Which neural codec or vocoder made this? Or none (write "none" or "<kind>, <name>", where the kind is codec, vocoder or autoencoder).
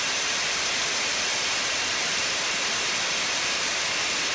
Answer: none